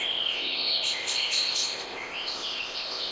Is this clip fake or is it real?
fake